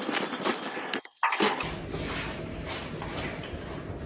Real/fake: real